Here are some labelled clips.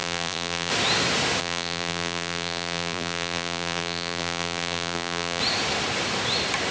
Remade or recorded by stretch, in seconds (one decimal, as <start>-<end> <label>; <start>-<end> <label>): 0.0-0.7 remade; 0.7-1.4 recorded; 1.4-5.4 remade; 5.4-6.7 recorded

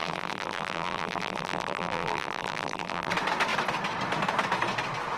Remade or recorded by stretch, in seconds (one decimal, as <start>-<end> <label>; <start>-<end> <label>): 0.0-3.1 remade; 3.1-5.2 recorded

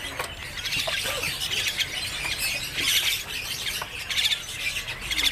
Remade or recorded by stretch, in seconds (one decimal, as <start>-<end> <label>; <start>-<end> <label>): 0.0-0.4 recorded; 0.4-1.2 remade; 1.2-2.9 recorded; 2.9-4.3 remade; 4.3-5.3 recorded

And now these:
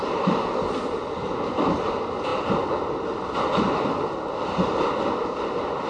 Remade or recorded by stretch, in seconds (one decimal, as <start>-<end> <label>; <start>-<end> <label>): 0.0-5.9 recorded

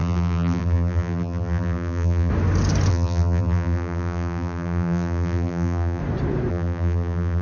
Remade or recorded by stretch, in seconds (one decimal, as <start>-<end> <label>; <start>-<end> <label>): 0.0-2.3 remade; 2.3-2.9 recorded; 2.9-6.0 remade; 6.0-6.5 recorded; 6.5-7.4 remade